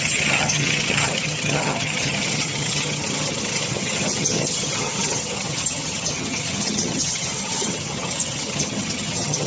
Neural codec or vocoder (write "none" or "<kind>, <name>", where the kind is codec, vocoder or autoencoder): vocoder, HiFi-GAN